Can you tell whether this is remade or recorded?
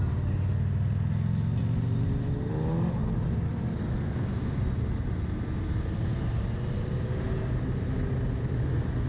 recorded